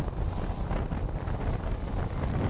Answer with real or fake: real